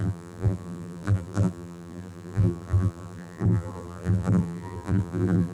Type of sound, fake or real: fake